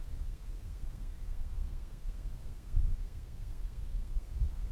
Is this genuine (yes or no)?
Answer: no